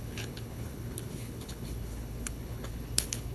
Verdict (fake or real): fake